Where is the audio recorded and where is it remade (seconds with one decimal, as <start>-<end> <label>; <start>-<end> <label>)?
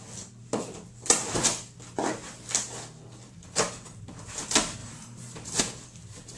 0.0-4.8 recorded; 4.8-5.6 remade; 5.6-6.4 recorded